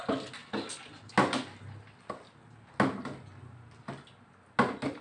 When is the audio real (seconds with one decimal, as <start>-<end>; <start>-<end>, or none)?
0.0-5.0